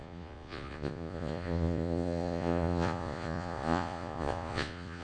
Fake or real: fake